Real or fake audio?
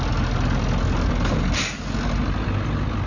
real